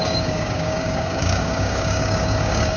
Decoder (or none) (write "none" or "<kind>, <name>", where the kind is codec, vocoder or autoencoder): codec, DAC